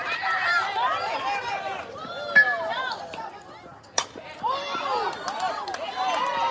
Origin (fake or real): real